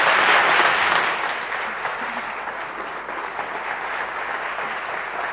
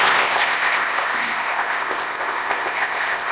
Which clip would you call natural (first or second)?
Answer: first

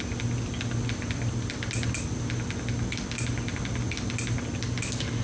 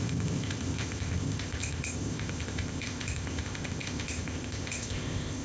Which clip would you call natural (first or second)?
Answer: first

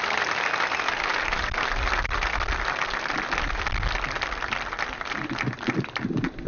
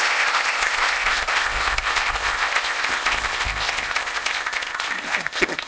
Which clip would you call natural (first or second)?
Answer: first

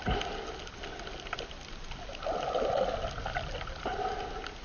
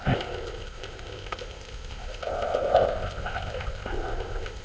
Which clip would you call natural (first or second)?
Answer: first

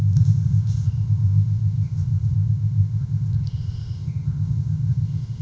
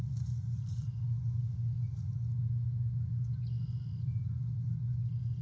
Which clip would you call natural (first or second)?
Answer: second